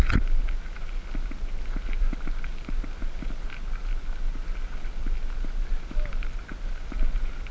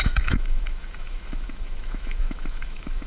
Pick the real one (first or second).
first